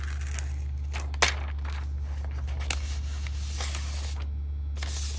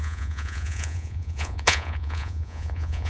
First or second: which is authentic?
first